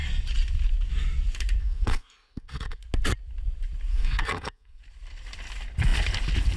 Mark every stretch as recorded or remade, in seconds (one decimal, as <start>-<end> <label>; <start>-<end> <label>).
0.0-1.6 recorded; 1.6-2.8 remade; 2.8-3.9 recorded; 3.9-4.8 remade; 4.8-6.6 recorded